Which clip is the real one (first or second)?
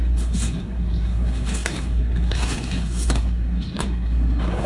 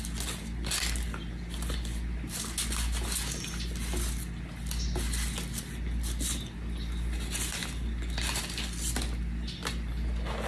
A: second